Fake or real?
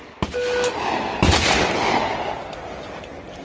real